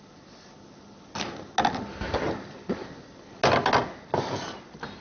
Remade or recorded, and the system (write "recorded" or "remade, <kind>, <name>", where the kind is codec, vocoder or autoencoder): recorded